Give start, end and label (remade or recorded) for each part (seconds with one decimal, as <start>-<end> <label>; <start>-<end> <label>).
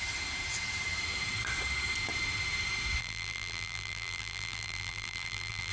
0.0-3.0 recorded; 3.0-5.7 remade